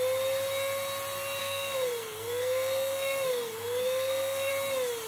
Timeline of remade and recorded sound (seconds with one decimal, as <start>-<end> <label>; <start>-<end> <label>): 0.0-1.4 recorded; 1.4-4.5 remade; 4.5-5.1 recorded